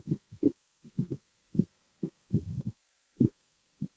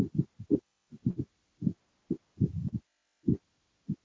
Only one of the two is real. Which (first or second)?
second